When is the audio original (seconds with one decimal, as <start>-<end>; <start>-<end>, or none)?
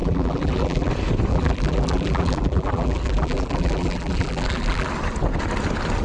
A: 0.9-1.3; 4.9-6.0